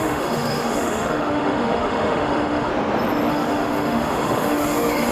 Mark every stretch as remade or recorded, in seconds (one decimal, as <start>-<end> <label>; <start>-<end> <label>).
0.0-2.7 remade; 2.7-3.3 recorded; 3.3-5.1 remade